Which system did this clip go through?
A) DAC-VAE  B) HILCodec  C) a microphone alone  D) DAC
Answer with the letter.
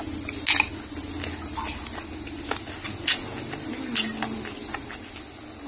C